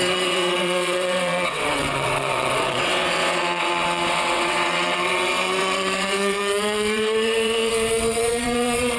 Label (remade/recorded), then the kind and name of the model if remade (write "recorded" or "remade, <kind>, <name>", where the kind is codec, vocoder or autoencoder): remade, vocoder, WaveNeXt